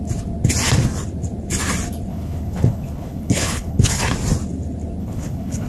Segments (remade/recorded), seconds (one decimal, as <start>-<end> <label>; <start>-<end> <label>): 0.0-2.1 recorded; 2.1-4.0 remade; 4.0-5.0 recorded; 5.0-5.7 remade